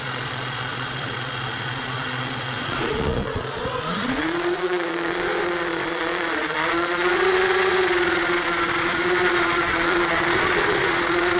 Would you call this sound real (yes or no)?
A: no